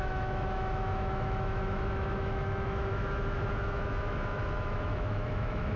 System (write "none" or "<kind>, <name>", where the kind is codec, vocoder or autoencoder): autoencoder, DAC-VAE